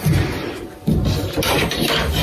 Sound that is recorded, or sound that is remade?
recorded